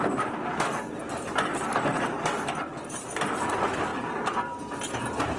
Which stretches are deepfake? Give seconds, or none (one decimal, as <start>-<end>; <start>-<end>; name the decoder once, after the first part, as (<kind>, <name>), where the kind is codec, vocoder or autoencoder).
none